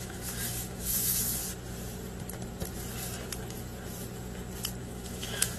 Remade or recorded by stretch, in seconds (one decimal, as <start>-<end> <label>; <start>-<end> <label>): 0.0-1.4 remade; 1.4-4.8 recorded; 4.8-5.6 remade